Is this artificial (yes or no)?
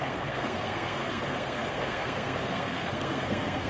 yes